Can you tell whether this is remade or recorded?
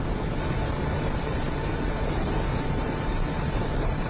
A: remade